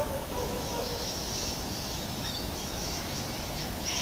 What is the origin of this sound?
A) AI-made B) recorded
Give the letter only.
A